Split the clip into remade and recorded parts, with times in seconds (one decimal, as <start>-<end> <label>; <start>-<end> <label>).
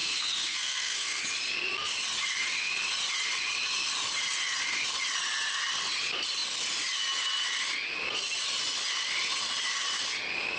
0.0-1.2 remade; 1.2-10.6 recorded